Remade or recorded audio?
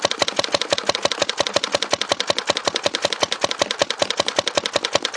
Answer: recorded